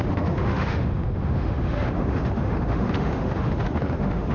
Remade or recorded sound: remade